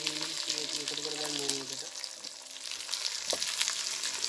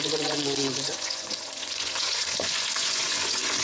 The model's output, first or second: second